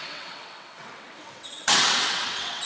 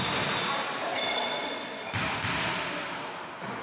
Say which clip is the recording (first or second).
second